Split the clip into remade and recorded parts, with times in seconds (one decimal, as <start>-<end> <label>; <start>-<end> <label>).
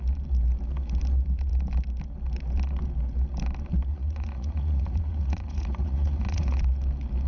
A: 0.0-3.9 recorded; 3.9-6.6 remade; 6.6-7.3 recorded